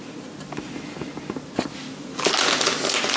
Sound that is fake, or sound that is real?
real